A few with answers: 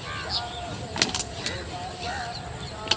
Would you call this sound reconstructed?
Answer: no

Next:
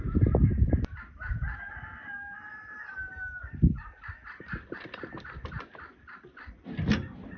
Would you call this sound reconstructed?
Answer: no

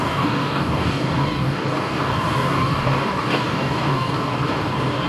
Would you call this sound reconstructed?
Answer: yes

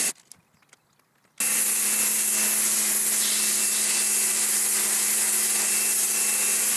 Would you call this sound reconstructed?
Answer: no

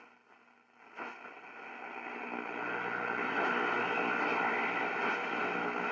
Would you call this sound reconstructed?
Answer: no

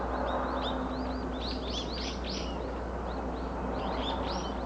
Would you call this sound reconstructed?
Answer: no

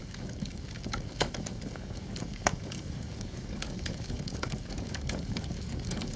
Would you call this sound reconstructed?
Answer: yes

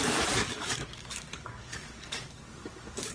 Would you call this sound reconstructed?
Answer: yes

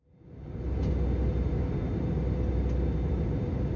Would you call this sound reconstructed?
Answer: no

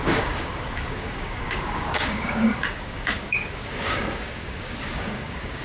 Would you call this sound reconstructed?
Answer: yes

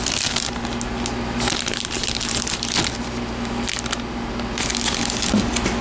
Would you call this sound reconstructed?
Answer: no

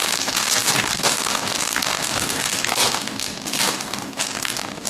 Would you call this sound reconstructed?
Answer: yes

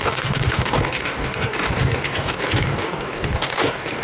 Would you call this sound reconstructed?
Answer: yes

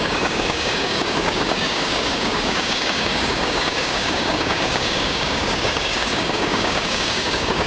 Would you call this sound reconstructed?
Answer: yes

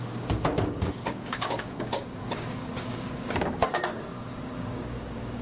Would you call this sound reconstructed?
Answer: yes